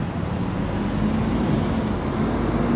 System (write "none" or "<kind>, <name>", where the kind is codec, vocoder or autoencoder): none